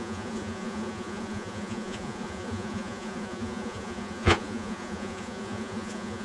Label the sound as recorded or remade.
remade